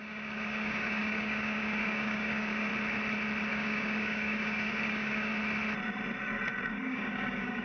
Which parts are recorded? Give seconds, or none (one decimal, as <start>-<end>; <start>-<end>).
2.7-3.5; 5.3-6.7